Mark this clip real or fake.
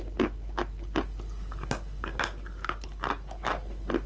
real